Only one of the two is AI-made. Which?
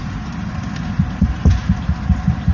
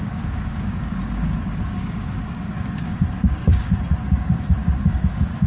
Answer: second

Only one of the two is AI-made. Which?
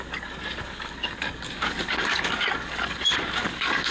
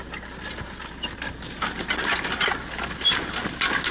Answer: first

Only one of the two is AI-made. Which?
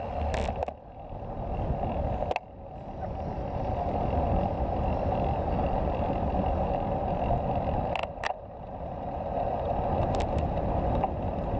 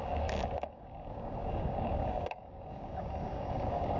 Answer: second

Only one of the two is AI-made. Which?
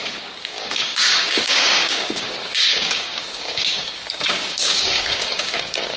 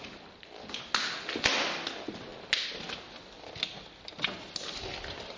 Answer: first